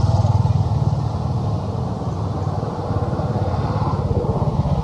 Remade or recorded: recorded